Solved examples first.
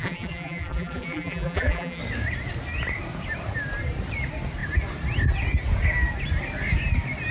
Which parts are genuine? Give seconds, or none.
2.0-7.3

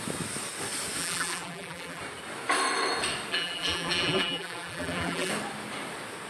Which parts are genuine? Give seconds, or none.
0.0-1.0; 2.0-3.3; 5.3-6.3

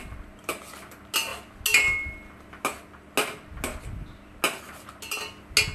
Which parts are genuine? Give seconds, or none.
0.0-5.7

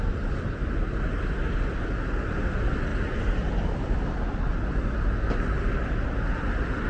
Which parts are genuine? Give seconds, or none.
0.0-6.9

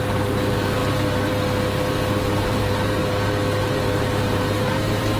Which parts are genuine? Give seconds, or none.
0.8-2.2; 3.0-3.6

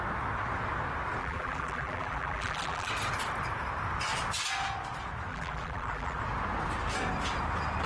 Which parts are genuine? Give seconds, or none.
0.0-1.2; 2.9-5.3; 6.2-7.9